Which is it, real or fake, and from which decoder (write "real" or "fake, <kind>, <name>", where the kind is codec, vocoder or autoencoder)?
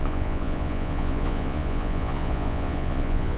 fake, vocoder, Vocos